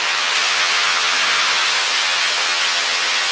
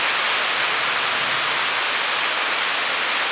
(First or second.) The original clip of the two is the second